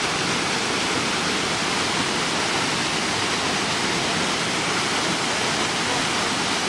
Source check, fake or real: real